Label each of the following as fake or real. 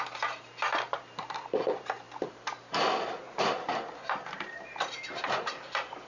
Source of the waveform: fake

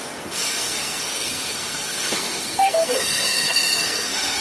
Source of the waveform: fake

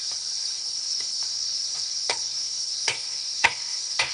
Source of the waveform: fake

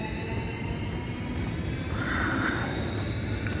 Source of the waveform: fake